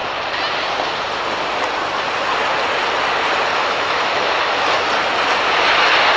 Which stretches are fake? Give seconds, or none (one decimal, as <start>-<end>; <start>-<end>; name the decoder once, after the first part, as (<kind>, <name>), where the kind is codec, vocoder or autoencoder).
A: 3.5-4.9 (autoencoder, DAC-VAE)